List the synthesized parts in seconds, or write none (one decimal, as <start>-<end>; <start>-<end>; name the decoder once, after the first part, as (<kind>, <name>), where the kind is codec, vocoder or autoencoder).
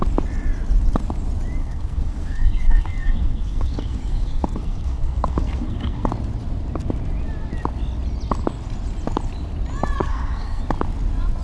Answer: 1.6-6.1 (codec, SNAC); 10.0-10.6